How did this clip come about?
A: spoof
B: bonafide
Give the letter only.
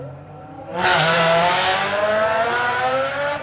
A